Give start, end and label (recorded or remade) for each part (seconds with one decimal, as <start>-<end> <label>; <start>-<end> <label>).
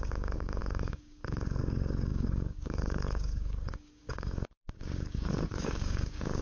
0.0-6.4 remade